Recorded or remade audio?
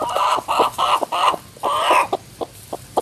recorded